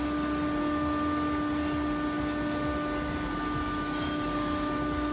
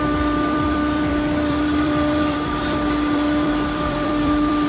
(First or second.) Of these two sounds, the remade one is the second